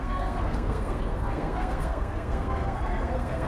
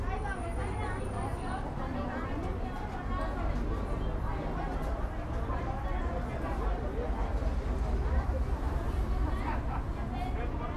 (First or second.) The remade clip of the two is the first